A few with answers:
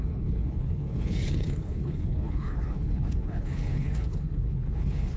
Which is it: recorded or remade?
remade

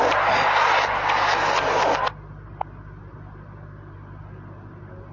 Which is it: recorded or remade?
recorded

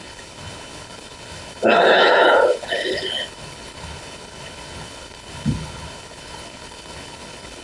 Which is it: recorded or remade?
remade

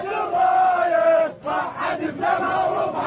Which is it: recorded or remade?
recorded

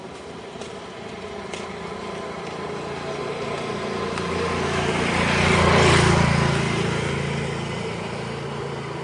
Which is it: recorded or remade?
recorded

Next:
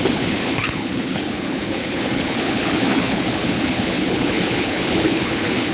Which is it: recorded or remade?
remade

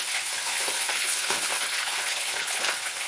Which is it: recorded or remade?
remade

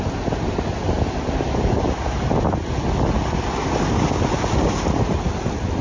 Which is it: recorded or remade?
recorded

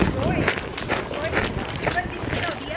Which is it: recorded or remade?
recorded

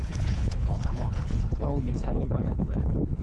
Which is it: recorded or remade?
remade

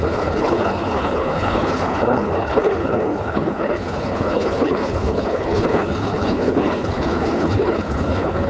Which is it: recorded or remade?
remade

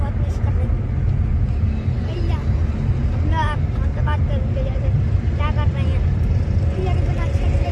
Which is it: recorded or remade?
recorded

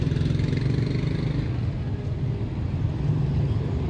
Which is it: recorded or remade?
recorded